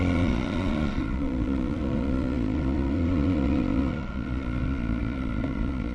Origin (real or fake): fake